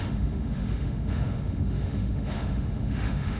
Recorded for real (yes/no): no